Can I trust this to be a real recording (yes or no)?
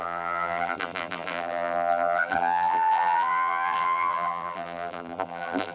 no